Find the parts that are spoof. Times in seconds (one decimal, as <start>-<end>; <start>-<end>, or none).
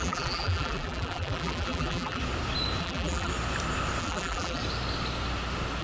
0.0-2.2; 2.8-3.3; 4.0-4.6